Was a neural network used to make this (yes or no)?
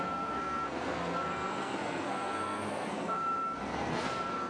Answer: yes